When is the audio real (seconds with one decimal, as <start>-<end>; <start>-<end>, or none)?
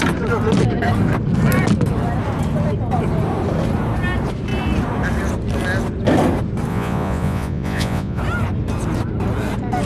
0.0-6.7; 8.2-9.8